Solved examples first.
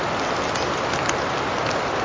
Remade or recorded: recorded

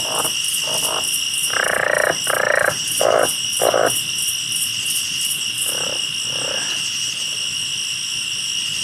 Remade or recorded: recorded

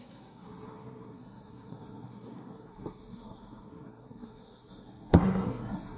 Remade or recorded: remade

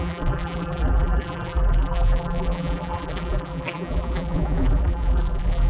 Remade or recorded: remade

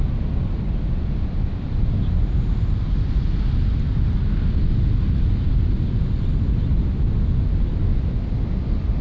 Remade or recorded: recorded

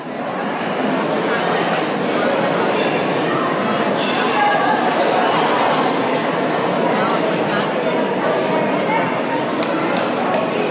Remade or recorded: recorded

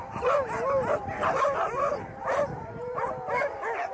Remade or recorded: recorded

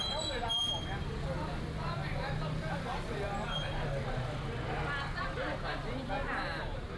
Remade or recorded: recorded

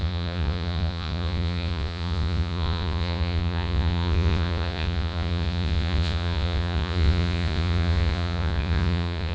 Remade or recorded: remade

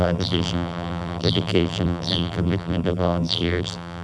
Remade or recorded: remade